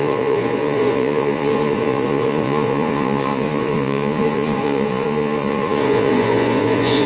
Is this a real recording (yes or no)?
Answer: no